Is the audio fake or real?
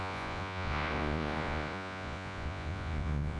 fake